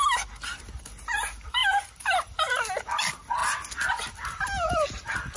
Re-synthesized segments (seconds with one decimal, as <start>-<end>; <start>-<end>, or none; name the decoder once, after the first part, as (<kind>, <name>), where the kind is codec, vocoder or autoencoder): none